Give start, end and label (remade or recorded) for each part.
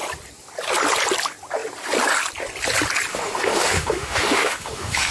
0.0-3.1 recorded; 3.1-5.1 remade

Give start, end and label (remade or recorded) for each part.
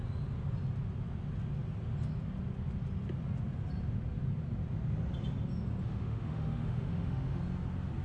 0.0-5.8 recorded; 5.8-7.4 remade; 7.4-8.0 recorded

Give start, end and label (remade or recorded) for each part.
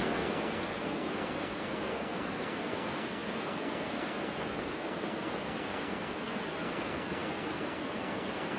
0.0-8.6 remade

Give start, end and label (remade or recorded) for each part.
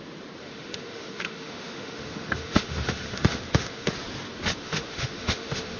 0.0-0.4 recorded; 0.4-3.9 remade; 3.9-4.6 recorded; 4.6-5.8 remade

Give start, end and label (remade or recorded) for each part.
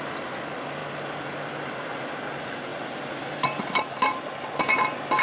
0.0-5.2 recorded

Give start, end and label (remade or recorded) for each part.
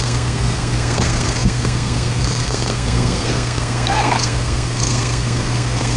0.0-6.0 remade